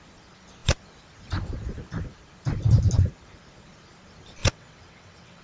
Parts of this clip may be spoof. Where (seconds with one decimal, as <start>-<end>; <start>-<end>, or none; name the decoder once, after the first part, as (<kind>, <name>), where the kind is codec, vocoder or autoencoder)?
4.4-5.4 (vocoder, WaveNeXt)